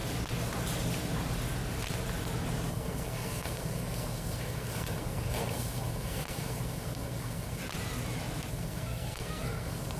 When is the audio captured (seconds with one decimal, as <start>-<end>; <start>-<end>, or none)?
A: 0.0-2.7; 7.6-8.5